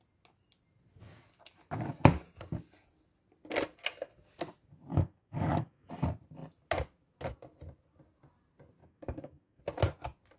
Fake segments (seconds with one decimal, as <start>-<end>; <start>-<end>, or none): 4.9-5.9; 8.8-9.6